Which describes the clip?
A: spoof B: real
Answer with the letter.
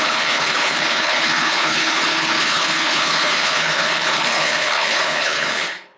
A